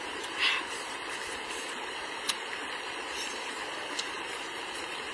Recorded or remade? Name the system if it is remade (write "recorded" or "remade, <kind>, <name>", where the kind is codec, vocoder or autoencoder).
remade, vocoder, BigVGAN v2